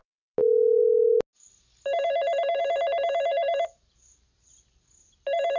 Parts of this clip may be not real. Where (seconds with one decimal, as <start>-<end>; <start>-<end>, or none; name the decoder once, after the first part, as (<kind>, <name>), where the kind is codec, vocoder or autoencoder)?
none